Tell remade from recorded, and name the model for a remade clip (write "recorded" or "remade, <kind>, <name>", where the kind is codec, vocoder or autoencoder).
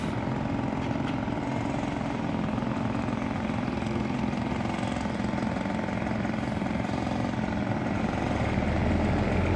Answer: recorded